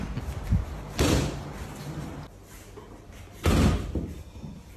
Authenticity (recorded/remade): recorded